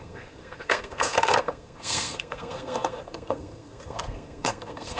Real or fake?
fake